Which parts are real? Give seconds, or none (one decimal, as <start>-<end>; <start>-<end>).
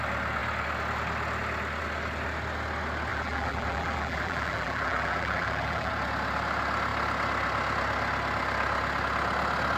0.0-3.1; 5.9-9.8